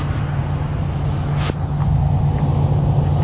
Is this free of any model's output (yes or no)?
yes